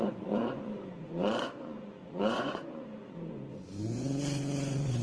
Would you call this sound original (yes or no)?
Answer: no